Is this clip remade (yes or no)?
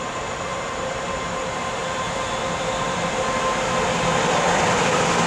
no